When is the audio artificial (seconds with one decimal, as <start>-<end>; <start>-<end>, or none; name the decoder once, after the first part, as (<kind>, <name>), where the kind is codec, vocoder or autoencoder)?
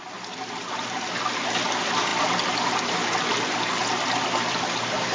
none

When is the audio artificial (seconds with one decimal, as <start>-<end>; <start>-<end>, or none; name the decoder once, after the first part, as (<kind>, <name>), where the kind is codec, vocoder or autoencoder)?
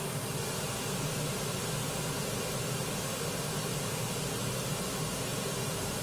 5.3-6.0 (vocoder, BigVGAN v2)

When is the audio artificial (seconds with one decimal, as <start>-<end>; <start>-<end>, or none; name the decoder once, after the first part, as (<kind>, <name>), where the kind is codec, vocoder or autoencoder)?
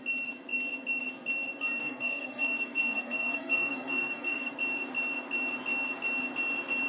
1.8-4.5 (codec, SNAC)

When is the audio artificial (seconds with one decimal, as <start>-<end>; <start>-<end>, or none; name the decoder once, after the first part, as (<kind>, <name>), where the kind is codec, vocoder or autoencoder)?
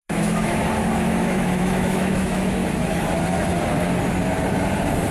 0.0-0.6 (autoencoder, DAC-VAE); 1.2-2.6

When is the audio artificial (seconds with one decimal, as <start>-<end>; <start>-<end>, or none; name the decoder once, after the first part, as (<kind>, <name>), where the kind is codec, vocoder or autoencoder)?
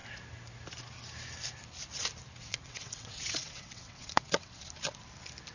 2.4-4.6 (vocoder, WaveNeXt)